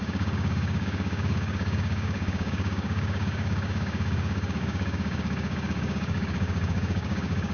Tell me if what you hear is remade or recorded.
remade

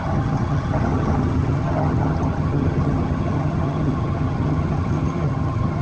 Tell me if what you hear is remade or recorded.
remade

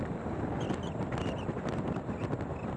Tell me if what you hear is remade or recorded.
recorded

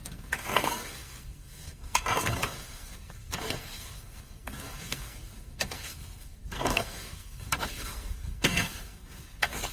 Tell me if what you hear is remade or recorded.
remade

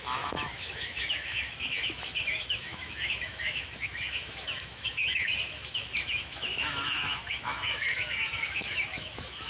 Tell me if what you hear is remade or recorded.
remade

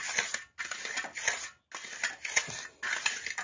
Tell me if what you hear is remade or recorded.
recorded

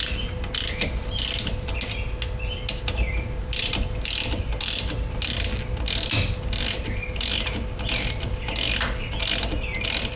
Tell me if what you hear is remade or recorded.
recorded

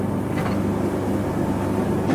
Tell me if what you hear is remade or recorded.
recorded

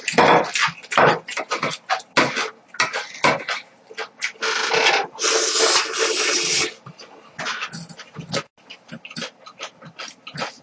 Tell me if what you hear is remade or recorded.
recorded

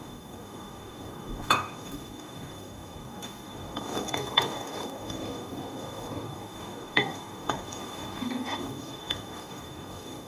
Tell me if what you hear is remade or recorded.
remade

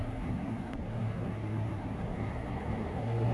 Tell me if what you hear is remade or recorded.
remade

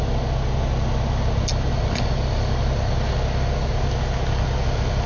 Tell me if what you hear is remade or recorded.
recorded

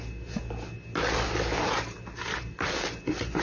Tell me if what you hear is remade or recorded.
recorded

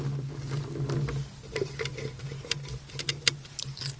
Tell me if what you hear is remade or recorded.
recorded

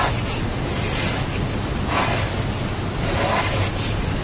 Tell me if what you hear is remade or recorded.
recorded